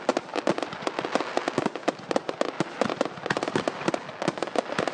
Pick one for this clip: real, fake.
real